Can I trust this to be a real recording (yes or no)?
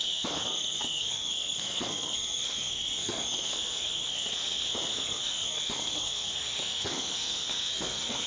no